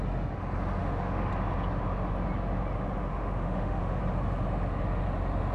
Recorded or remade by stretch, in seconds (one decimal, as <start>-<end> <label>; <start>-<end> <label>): 0.0-0.8 recorded; 0.8-1.3 remade; 1.3-3.1 recorded; 3.1-4.0 remade; 4.0-5.5 recorded